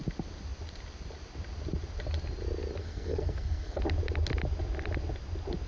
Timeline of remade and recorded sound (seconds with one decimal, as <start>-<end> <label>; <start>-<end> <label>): 0.0-2.8 recorded; 2.8-3.8 remade; 3.8-5.7 recorded